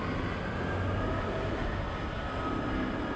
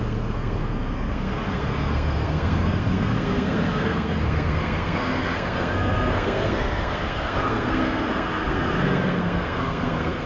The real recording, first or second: first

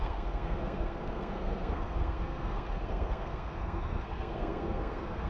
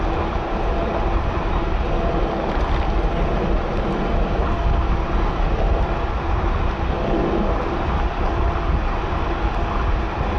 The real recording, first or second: second